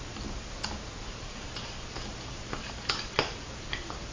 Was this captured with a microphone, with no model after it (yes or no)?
yes